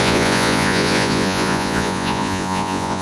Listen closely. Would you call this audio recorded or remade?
remade